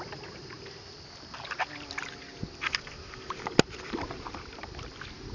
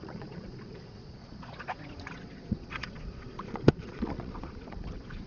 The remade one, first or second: second